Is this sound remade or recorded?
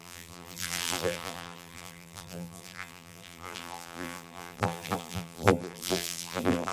remade